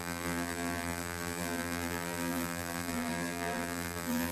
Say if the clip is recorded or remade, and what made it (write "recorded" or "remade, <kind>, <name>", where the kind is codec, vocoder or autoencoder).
remade, vocoder, BigVGAN v2